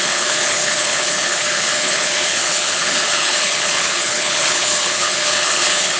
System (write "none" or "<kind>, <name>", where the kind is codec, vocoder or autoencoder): codec, HILCodec